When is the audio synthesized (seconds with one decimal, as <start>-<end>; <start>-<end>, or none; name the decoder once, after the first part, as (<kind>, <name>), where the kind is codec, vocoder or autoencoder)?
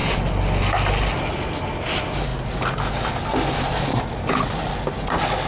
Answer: none